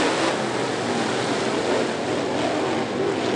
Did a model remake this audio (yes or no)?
no